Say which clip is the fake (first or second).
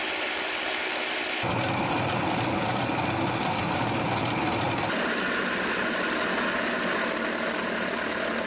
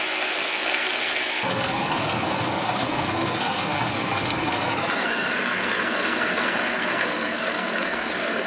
second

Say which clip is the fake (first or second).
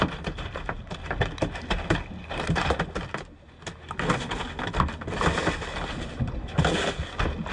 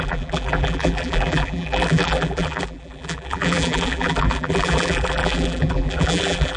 second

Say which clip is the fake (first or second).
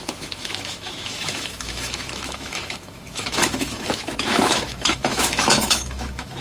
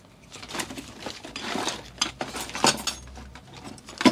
first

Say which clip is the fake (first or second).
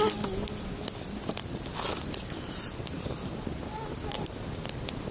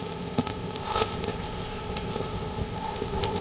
second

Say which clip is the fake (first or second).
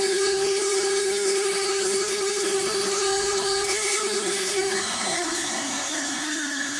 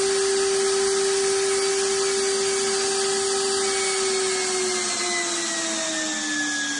first